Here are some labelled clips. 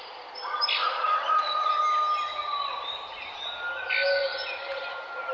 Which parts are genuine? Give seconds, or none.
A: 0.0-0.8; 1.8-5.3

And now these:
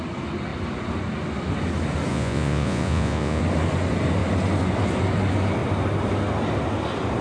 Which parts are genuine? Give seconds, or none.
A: 0.0-2.1; 3.4-7.2

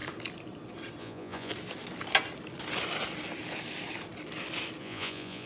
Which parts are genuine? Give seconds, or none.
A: 0.0-1.0; 1.5-4.8